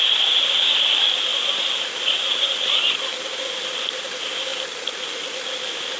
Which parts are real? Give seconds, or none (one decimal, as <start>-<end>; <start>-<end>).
0.0-6.0